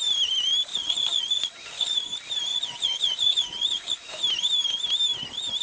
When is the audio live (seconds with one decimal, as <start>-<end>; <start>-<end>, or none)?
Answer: 0.0-0.7; 2.0-2.5; 4.1-5.6